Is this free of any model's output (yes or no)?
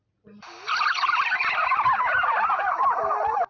yes